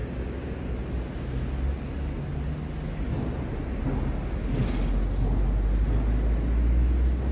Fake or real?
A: real